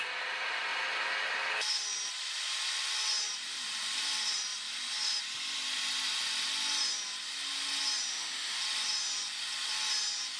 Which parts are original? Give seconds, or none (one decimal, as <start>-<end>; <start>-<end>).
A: 0.0-8.1; 8.6-10.4